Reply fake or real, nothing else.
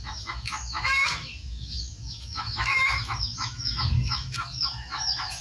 fake